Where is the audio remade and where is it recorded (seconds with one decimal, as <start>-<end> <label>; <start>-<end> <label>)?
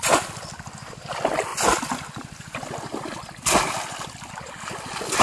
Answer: 0.0-5.2 recorded